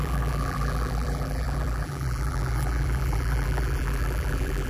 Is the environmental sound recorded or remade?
remade